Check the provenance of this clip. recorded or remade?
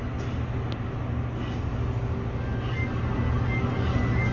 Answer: recorded